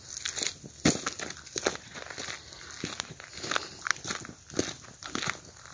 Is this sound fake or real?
real